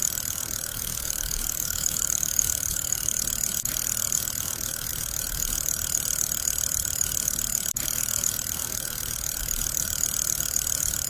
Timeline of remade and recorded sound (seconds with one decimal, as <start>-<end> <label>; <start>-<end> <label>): 0.0-0.7 recorded; 0.7-3.2 remade; 3.2-11.1 recorded

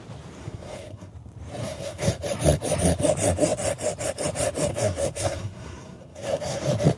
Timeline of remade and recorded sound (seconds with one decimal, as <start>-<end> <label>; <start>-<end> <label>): 0.0-0.4 recorded; 0.4-1.1 remade; 1.1-1.6 recorded; 1.6-2.1 remade; 2.1-4.7 recorded; 4.7-6.6 remade; 6.6-7.0 recorded

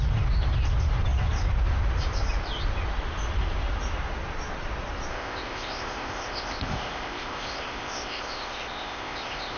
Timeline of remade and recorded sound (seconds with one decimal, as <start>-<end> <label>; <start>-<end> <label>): 0.0-5.1 recorded; 5.1-9.6 remade

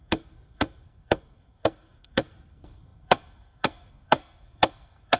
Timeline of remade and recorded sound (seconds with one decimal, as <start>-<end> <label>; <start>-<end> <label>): 0.0-5.2 remade

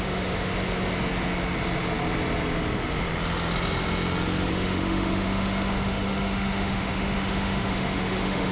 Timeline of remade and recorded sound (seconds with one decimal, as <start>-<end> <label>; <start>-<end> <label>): 0.0-0.5 remade; 0.5-4.5 recorded; 4.5-8.5 remade